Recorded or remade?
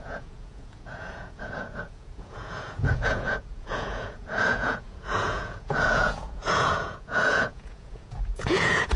remade